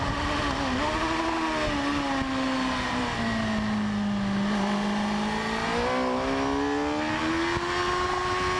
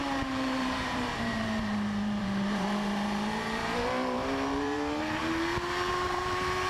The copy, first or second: second